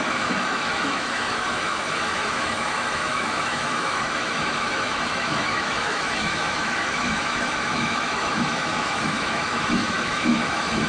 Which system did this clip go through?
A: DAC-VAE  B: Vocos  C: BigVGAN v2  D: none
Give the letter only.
A